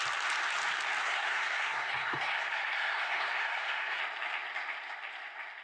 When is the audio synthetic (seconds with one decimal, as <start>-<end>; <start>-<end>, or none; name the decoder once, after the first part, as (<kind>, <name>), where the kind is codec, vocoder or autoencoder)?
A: 1.0-4.0 (codec, SNAC)